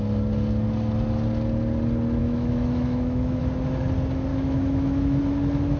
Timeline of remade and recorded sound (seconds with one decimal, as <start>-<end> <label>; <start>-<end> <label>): 0.0-2.2 recorded; 2.2-3.4 remade; 3.4-4.3 recorded; 4.3-5.2 remade; 5.2-5.8 recorded